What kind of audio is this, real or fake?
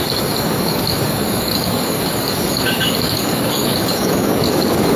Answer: fake